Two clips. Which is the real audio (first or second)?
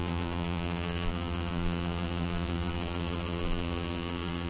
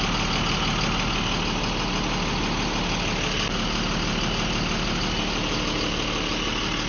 second